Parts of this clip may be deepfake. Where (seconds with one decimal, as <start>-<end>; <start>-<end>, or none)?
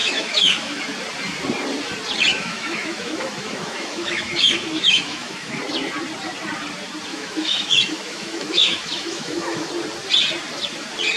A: 0.0-0.8; 2.3-5.6; 7.1-9.7